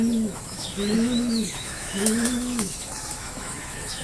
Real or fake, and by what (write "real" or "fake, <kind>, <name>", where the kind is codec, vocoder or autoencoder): fake, autoencoder, DAC-VAE